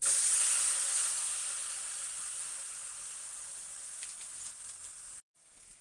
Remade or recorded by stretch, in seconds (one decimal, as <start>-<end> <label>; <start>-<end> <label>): 0.0-5.8 recorded